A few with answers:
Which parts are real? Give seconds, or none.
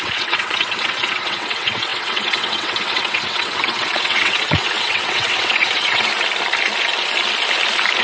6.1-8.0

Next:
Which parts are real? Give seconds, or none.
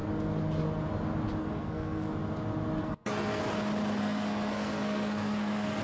0.0-1.4; 2.1-2.8; 3.4-4.0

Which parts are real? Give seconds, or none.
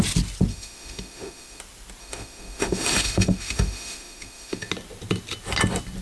0.0-0.5; 1.6-2.0; 4.7-6.0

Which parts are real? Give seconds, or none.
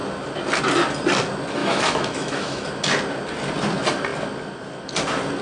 0.0-1.6; 2.7-5.4